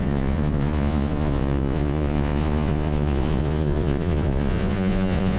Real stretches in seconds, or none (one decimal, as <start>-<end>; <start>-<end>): none